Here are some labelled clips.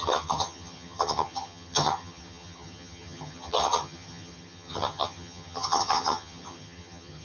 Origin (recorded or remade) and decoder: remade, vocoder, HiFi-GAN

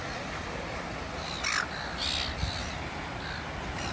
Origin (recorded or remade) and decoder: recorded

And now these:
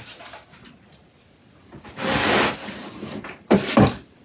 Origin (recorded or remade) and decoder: recorded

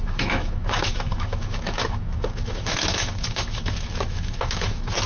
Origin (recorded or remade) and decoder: remade, autoencoder, DAC-VAE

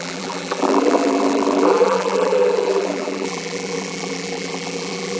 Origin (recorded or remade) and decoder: remade, vocoder, BigVGAN v2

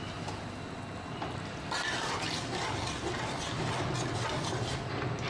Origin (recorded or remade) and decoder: recorded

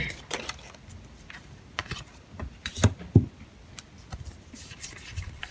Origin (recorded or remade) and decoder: remade, vocoder, BigVGAN v2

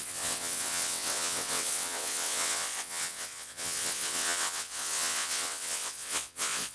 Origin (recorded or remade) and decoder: remade, vocoder, WaveNeXt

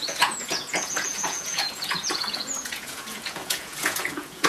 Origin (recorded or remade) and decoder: remade, vocoder, Vocos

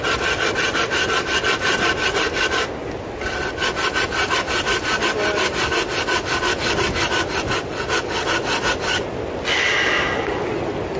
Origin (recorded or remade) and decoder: recorded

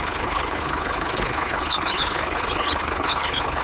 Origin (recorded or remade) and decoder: remade, codec, HILCodec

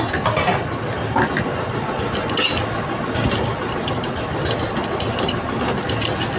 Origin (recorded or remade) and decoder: recorded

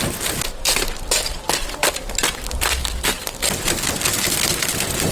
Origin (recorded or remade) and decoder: recorded